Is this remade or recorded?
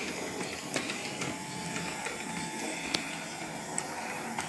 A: recorded